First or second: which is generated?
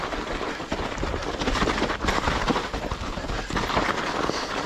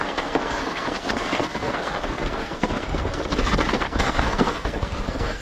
second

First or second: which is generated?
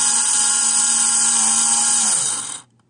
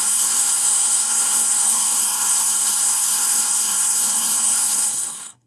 second